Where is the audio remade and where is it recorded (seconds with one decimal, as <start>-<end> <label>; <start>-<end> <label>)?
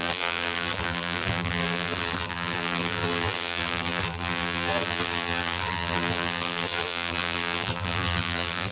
0.0-8.7 remade